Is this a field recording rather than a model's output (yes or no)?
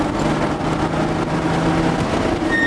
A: yes